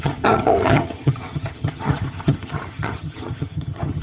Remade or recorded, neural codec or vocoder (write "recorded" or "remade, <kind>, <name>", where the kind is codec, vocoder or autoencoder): remade, vocoder, HiFi-GAN